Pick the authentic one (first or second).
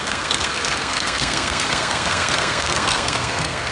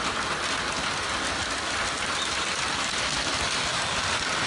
second